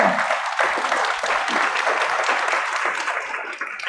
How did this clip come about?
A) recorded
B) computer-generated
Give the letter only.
A